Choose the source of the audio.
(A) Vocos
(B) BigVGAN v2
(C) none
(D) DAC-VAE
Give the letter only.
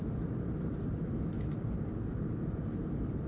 B